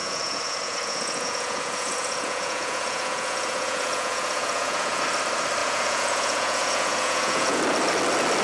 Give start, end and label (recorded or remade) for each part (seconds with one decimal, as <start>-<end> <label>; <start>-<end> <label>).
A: 0.0-5.0 remade; 5.0-5.6 recorded; 5.6-7.6 remade; 7.6-8.4 recorded